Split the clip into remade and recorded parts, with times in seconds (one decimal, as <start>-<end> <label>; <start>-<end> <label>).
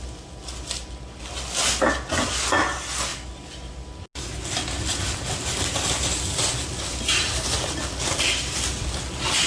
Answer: 0.0-9.5 recorded